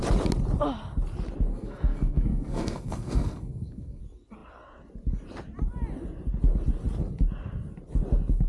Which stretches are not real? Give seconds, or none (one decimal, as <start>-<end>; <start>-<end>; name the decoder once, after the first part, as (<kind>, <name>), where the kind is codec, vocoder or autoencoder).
1.5-4.0 (codec, SNAC)